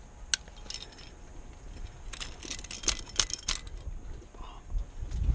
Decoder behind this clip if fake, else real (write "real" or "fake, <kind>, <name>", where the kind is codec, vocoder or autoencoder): real